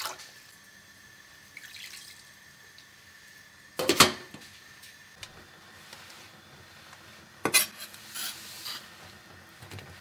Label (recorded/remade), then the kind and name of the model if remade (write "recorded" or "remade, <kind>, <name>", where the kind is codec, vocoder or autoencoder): recorded